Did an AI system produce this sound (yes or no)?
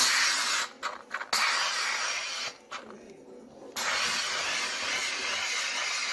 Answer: no